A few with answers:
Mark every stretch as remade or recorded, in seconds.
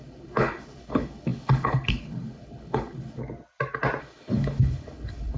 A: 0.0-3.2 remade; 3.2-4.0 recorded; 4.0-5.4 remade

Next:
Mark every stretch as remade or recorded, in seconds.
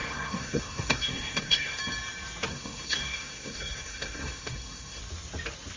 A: 0.0-1.8 remade; 1.8-2.5 recorded; 2.5-5.0 remade; 5.0-5.8 recorded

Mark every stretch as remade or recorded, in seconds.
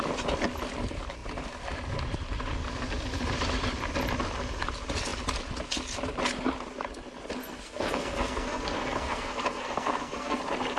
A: 0.0-7.4 recorded; 7.4-10.4 remade; 10.4-10.8 recorded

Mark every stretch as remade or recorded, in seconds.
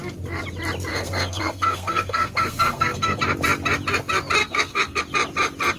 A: 0.0-0.9 recorded; 0.9-3.2 remade; 3.2-4.4 recorded; 4.4-5.0 remade; 5.0-5.8 recorded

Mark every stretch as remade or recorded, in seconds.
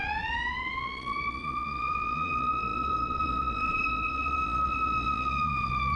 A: 0.0-6.0 remade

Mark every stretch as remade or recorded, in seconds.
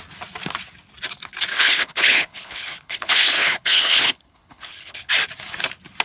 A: 0.0-1.5 recorded; 1.5-5.1 remade; 5.1-6.0 recorded